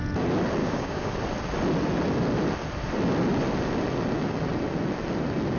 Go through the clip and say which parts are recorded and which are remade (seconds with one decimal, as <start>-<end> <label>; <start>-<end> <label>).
0.0-0.6 recorded; 0.6-1.1 remade; 1.1-5.6 recorded